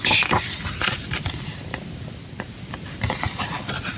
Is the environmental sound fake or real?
real